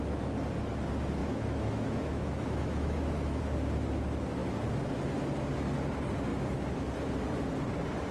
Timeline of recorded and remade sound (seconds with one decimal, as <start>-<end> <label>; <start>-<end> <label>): 0.0-1.2 recorded; 1.2-3.4 remade; 3.4-8.1 recorded